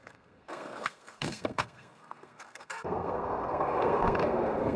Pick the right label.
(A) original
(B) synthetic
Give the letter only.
B